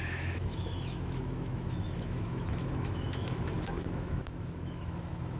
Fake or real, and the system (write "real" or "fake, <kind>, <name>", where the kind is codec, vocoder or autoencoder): fake, autoencoder, DAC-VAE